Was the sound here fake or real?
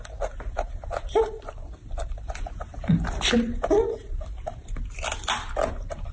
fake